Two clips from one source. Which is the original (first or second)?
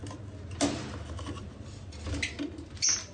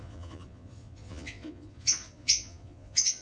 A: first